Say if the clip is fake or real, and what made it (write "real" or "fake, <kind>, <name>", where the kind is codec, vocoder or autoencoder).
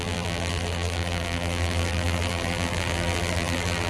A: fake, vocoder, BigVGAN v2